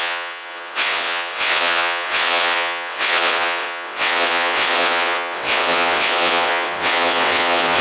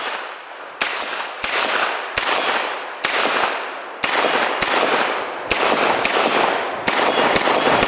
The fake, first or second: first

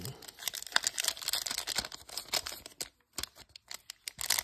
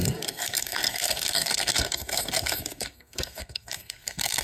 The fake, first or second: second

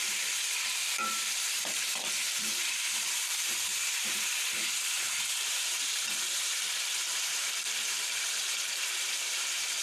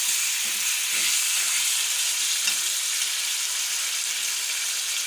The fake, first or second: first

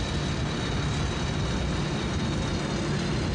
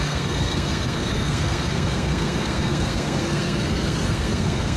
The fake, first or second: second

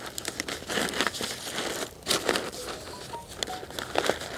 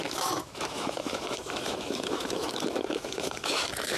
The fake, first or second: second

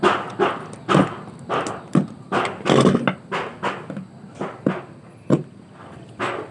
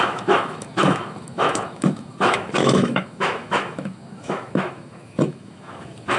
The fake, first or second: second